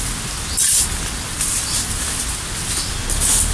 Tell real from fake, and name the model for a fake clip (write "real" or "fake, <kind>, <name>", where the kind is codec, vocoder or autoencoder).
real